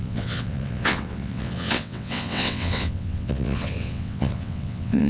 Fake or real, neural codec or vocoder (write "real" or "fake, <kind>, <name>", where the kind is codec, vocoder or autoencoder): fake, vocoder, WaveNeXt